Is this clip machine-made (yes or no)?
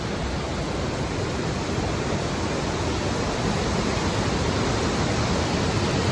no